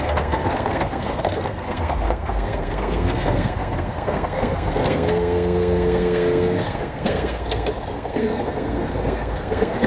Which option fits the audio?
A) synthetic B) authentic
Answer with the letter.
A